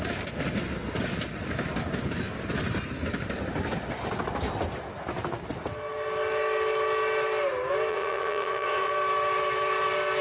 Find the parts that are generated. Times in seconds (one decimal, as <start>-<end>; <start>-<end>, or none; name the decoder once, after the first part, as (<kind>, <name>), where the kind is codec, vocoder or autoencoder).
7.9-8.9 (vocoder, WaveNeXt)